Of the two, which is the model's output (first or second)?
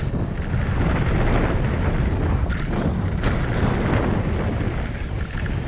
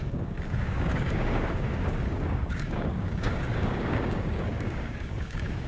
second